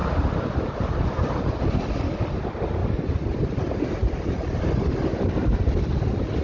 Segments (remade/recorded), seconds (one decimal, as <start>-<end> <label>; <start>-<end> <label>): 0.0-1.6 remade; 1.6-6.4 recorded